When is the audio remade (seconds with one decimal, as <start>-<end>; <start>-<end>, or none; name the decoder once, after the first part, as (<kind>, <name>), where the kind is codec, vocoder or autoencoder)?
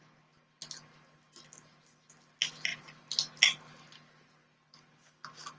none